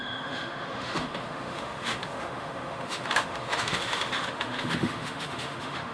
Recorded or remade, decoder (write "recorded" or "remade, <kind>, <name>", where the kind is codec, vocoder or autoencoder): remade, autoencoder, DAC-VAE